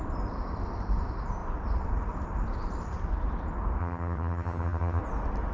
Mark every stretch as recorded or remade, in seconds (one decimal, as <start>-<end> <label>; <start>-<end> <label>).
0.0-3.8 recorded; 3.8-5.0 remade; 5.0-5.5 recorded